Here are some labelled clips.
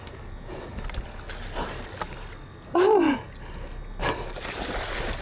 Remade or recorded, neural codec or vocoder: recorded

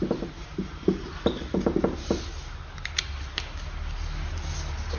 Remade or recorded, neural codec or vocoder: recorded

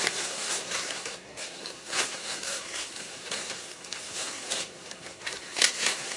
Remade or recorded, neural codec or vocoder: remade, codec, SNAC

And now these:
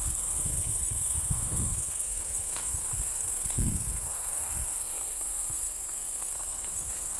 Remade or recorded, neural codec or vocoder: remade, codec, SNAC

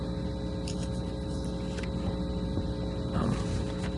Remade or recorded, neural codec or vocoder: recorded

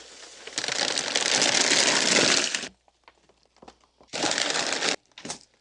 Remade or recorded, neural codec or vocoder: recorded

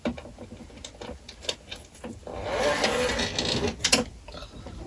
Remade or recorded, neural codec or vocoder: recorded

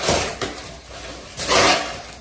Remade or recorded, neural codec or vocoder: recorded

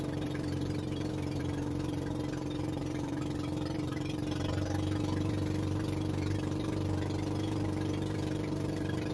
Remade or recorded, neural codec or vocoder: remade, vocoder, BigVGAN v2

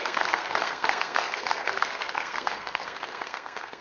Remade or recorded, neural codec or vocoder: remade, codec, SNAC